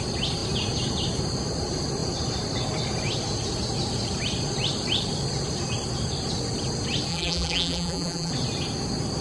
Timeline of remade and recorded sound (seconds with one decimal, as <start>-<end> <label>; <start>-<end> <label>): 0.0-7.1 recorded; 7.1-8.3 remade; 8.3-9.2 recorded